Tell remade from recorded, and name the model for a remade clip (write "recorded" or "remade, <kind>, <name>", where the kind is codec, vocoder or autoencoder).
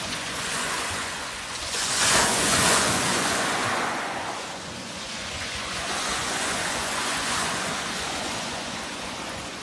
remade, vocoder, Vocos